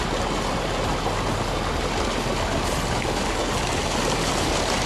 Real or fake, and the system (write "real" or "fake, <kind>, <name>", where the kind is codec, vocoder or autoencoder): real